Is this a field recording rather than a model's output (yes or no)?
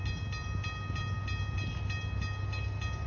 yes